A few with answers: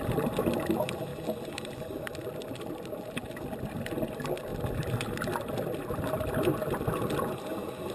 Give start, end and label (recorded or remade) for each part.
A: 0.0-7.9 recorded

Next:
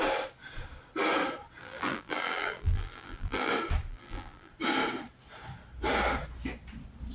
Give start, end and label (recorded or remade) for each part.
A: 0.0-1.6 recorded; 1.6-3.5 remade; 3.5-3.9 recorded; 3.9-4.5 remade; 4.5-7.1 recorded

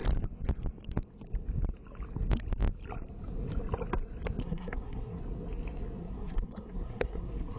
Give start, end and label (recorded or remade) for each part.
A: 0.0-4.4 recorded; 4.4-5.2 remade; 5.2-6.0 recorded; 6.0-7.6 remade

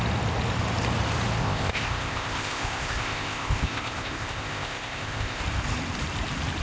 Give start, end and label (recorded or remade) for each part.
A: 0.0-1.4 recorded; 1.4-5.4 remade; 5.4-6.6 recorded

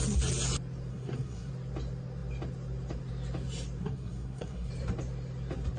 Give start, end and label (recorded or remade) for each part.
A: 0.0-0.9 recorded; 0.9-1.5 remade; 1.5-3.8 recorded; 3.8-4.7 remade; 4.7-5.8 recorded